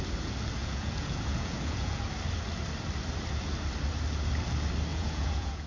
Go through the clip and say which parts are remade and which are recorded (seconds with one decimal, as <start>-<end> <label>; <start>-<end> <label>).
0.0-0.6 recorded; 0.6-2.0 remade; 2.0-4.9 recorded; 4.9-5.7 remade